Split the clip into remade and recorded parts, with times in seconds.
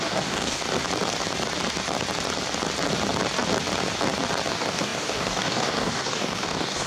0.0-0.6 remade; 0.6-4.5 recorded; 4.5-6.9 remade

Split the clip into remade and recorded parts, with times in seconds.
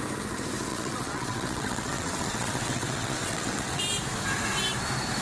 0.0-0.7 recorded; 0.7-3.8 remade; 3.8-5.2 recorded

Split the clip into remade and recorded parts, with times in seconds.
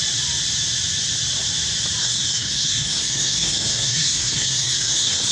0.0-2.0 recorded; 2.0-5.3 remade